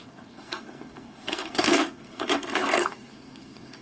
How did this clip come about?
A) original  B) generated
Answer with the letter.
B